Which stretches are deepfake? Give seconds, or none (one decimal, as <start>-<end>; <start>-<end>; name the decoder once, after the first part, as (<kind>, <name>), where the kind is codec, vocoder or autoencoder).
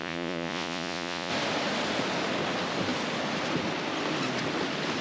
0.0-1.3 (vocoder, Vocos)